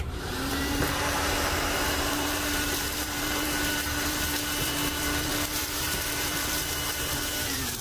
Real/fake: fake